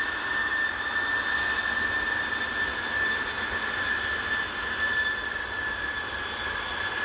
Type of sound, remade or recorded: recorded